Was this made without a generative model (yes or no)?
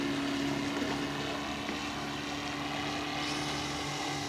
yes